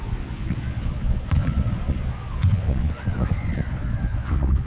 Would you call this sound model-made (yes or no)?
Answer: yes